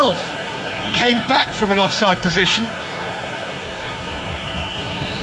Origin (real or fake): fake